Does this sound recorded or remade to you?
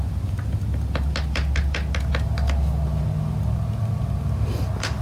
recorded